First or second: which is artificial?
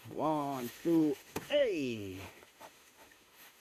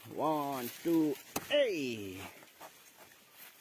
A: first